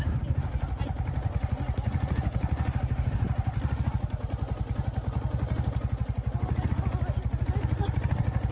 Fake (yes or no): no